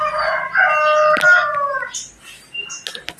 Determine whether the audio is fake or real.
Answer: real